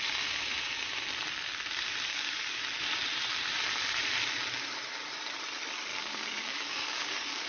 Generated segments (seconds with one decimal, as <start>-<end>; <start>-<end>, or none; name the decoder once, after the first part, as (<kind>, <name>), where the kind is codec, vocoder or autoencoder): 2.1-2.6 (codec, DAC); 5.9-7.5